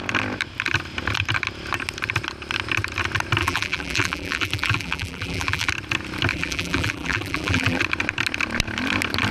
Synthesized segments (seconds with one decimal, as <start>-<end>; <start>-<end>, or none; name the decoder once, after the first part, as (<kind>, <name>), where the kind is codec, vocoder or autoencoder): 3.4-5.7 (vocoder, BigVGAN v2); 6.3-7.8